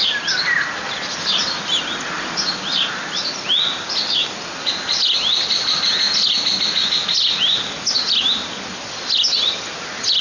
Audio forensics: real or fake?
real